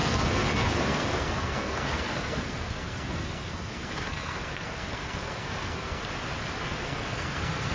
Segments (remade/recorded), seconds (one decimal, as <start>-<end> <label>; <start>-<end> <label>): 0.0-6.0 remade; 6.0-6.6 recorded; 6.6-7.7 remade